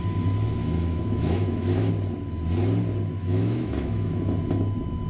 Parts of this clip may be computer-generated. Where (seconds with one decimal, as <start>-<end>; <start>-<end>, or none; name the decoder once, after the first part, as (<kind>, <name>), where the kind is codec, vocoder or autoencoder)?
0.6-1.9 (autoencoder, DAC-VAE); 3.2-4.1